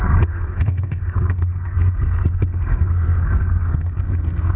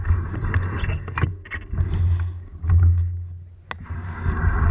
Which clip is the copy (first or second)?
first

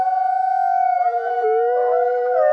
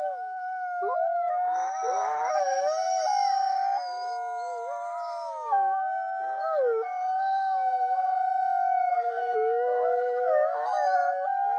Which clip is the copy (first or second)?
second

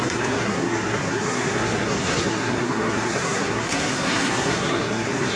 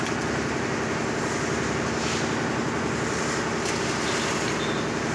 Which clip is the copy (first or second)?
first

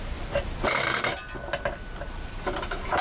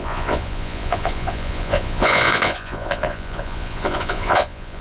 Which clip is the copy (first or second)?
second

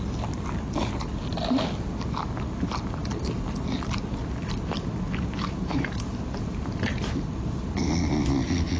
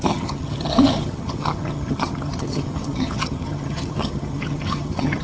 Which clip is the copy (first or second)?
second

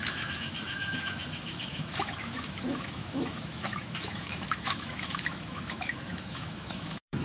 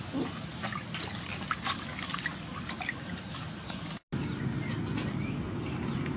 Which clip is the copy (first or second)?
first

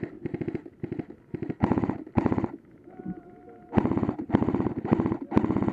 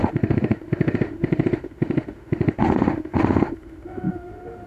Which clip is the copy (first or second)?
second